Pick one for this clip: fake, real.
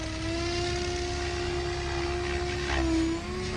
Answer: real